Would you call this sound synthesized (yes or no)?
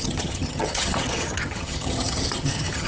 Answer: yes